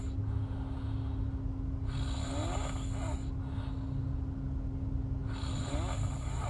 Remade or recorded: recorded